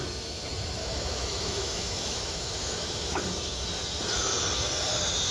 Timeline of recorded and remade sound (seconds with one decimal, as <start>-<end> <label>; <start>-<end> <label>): 0.0-0.8 recorded; 0.8-3.2 remade; 3.2-5.3 recorded